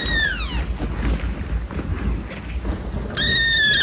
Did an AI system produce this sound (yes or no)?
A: no